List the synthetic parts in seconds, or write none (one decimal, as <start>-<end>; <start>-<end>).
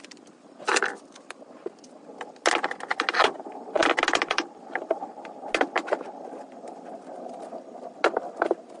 none